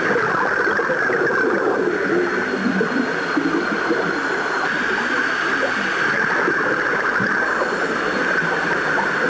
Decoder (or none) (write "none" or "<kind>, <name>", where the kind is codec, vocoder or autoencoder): none